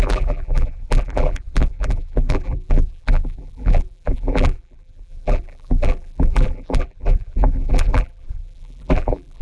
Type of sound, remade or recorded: remade